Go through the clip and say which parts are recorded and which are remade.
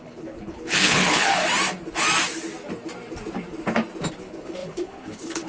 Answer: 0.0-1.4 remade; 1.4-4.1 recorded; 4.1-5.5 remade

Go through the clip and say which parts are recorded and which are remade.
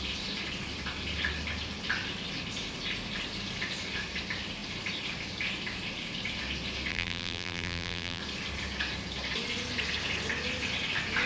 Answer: 0.0-6.9 recorded; 6.9-8.2 remade; 8.2-11.3 recorded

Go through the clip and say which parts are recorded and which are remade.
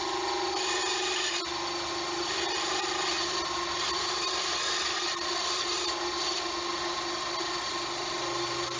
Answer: 0.0-8.8 recorded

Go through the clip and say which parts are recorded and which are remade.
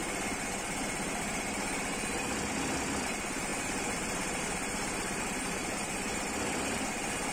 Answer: 0.0-7.3 recorded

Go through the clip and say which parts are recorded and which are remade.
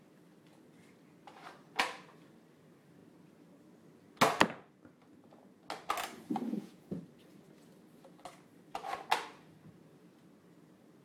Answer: 0.0-6.5 recorded; 6.5-7.0 remade; 7.0-11.0 recorded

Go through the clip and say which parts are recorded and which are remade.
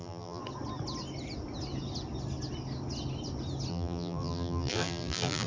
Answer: 0.0-0.4 remade; 0.4-3.7 recorded; 3.7-5.5 remade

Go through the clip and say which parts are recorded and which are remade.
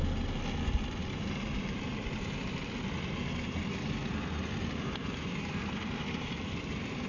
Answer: 0.0-7.1 recorded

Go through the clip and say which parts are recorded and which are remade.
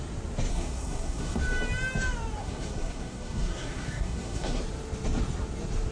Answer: 0.0-0.5 recorded; 0.5-1.4 remade; 1.4-2.4 recorded; 2.4-4.6 remade; 4.6-5.9 recorded